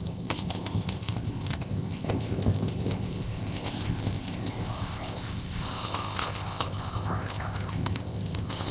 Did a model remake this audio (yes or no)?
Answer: yes